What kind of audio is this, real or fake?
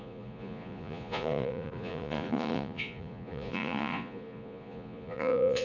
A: fake